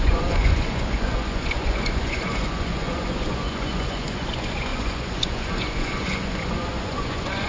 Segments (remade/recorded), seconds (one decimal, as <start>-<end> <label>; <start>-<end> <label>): 0.0-7.5 remade

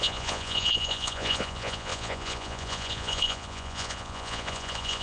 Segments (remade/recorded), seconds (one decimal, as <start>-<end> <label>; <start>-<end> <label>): 0.0-5.0 remade

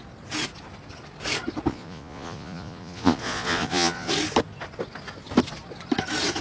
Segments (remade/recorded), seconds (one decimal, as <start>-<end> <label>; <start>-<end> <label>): 0.0-1.7 recorded; 1.7-4.1 remade; 4.1-6.4 recorded

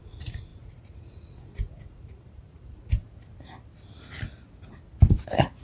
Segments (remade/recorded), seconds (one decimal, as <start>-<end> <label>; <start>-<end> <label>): 0.0-3.0 remade; 3.0-5.6 recorded

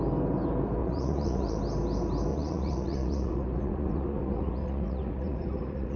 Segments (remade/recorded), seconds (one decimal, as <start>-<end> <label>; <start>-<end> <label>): 0.0-0.8 recorded; 0.8-1.6 remade; 1.6-2.3 recorded; 2.3-6.0 remade

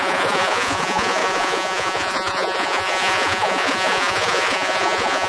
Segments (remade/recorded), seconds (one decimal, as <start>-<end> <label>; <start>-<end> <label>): 0.0-5.3 remade

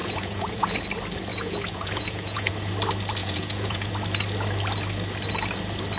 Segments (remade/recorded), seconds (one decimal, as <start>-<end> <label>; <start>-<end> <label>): 0.0-0.8 remade; 0.8-1.3 recorded; 1.3-2.5 remade; 2.5-3.2 recorded; 3.2-3.9 remade; 3.9-6.0 recorded